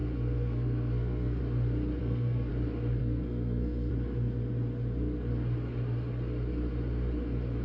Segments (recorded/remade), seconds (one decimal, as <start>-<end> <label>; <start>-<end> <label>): 0.0-1.4 remade; 1.4-2.0 recorded; 2.0-2.5 remade; 2.5-3.0 recorded; 3.0-3.9 remade; 3.9-7.6 recorded